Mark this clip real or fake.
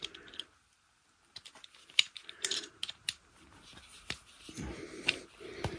real